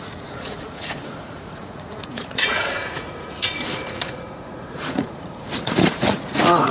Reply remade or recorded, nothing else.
remade